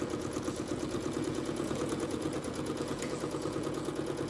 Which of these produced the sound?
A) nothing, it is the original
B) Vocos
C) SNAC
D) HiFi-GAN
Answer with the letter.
B